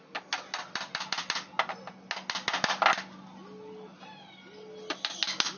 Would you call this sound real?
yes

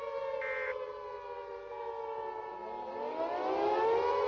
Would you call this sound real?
yes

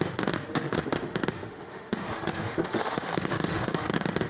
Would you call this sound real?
no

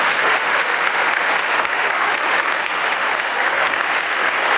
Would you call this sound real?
no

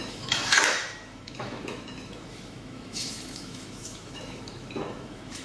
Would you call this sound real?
no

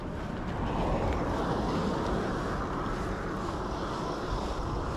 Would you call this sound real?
yes